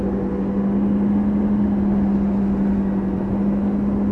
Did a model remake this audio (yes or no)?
no